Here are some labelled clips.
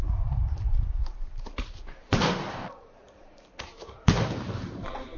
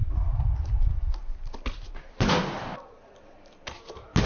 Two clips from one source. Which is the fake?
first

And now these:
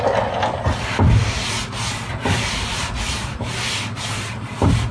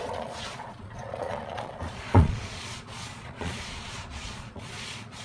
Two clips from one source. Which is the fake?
second